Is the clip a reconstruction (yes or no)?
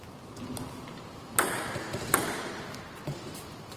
yes